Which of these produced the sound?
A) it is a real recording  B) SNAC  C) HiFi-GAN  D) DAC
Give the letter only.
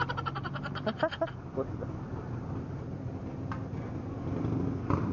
A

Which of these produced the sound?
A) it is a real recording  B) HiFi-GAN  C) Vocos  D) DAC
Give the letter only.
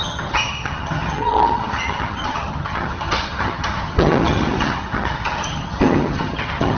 B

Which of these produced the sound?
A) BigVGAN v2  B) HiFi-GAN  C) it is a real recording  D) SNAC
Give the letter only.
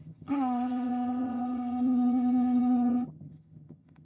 B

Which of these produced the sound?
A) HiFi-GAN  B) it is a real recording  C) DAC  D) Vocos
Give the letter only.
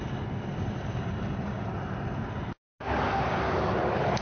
B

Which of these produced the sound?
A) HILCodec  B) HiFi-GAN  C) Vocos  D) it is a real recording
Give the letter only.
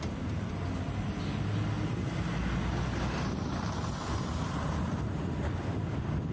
D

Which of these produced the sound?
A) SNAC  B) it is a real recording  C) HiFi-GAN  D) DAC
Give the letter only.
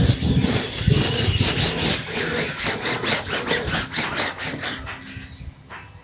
B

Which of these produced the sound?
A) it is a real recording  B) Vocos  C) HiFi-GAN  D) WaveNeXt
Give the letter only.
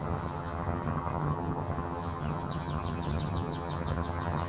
C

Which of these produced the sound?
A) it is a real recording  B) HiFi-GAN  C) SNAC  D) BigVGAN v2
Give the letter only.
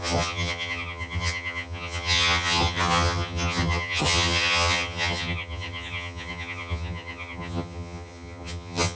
B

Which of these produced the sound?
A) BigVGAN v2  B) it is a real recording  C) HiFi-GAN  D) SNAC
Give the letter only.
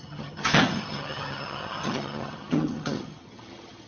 C